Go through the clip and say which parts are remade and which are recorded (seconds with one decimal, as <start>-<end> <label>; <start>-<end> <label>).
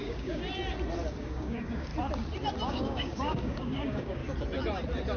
0.0-0.4 remade; 0.4-1.2 recorded; 1.2-1.9 remade; 1.9-2.7 recorded; 2.7-4.2 remade; 4.2-5.2 recorded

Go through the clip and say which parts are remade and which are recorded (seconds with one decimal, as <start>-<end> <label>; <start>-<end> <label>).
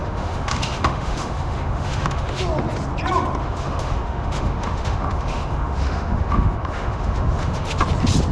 0.0-2.4 remade; 2.4-3.4 recorded; 3.4-7.8 remade; 7.8-8.3 recorded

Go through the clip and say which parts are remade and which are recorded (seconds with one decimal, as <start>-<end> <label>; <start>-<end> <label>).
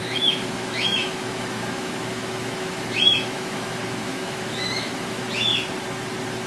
0.0-5.5 remade; 5.5-6.5 recorded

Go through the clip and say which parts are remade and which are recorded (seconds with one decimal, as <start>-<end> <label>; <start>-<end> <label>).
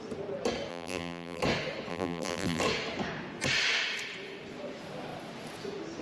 0.0-0.7 recorded; 0.7-1.4 remade; 1.4-1.9 recorded; 1.9-2.6 remade; 2.6-6.0 recorded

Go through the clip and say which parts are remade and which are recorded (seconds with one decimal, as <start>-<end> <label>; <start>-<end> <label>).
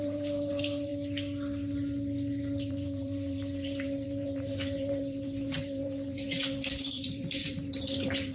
0.0-0.9 remade; 0.9-2.7 recorded; 2.7-8.3 remade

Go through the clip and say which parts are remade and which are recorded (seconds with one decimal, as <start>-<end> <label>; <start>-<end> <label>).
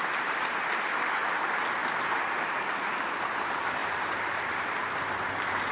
0.0-1.8 recorded; 1.8-2.6 remade; 2.6-3.8 recorded; 3.8-5.1 remade; 5.1-5.7 recorded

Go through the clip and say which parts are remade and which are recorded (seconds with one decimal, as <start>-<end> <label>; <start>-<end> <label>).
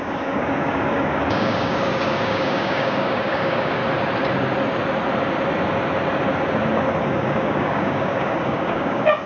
0.0-3.8 remade; 3.8-7.0 recorded; 7.0-9.3 remade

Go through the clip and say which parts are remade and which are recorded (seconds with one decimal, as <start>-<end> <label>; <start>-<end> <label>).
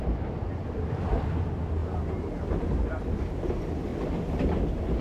0.0-1.8 remade; 1.8-3.1 recorded; 3.1-3.9 remade; 3.9-5.0 recorded